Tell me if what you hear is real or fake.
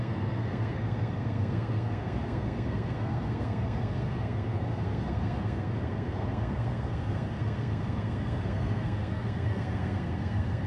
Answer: fake